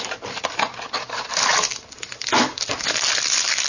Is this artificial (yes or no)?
yes